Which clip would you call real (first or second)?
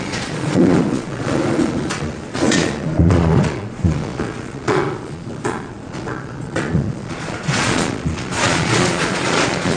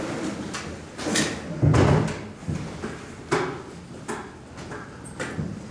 second